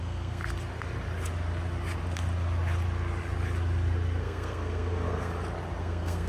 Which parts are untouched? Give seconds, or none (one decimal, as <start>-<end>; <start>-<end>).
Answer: 0.4-4.2; 5.3-5.8